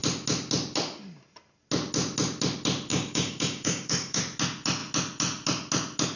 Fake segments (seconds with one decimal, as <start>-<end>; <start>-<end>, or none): 2.9-4.2